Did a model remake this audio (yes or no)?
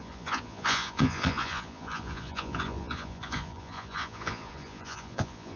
yes